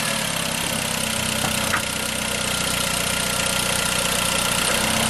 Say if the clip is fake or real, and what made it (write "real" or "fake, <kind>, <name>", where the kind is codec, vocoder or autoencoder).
real